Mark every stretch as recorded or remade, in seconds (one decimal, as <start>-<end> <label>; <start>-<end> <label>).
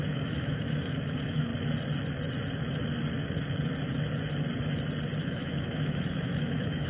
0.0-1.5 remade; 1.5-5.2 recorded; 5.2-6.9 remade